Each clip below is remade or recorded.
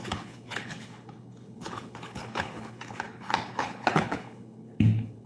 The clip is remade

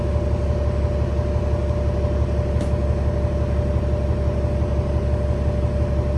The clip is recorded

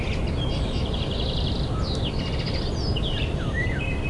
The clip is recorded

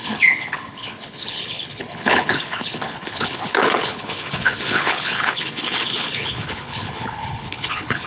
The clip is remade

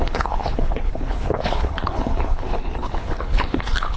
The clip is remade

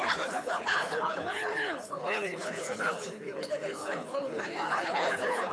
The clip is remade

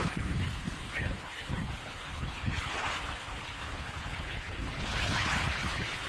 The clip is remade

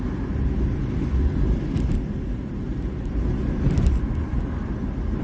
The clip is recorded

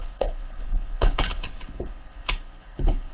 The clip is remade